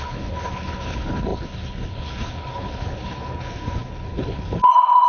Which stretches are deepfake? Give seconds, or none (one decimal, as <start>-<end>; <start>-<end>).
0.0-5.1